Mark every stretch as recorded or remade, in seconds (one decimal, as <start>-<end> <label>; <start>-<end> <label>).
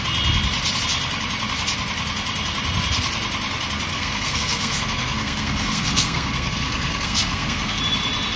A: 0.0-3.9 recorded; 3.9-7.8 remade; 7.8-8.4 recorded